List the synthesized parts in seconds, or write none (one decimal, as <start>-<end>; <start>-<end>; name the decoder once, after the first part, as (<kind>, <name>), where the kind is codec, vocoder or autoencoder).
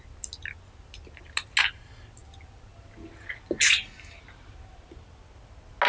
none